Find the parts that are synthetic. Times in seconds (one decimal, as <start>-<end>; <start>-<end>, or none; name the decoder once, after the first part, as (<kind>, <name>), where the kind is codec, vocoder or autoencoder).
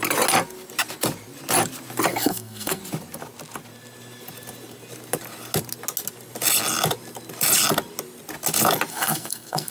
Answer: 2.1-2.8 (codec, SNAC); 8.9-9.7